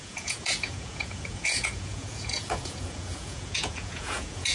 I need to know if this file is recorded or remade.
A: remade